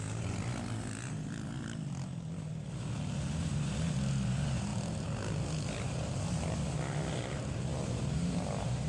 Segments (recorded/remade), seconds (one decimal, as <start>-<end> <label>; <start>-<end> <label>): 0.0-8.9 recorded